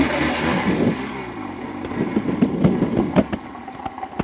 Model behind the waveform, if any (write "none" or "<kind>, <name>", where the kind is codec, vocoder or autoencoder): none